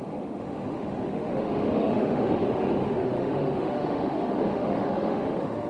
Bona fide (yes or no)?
no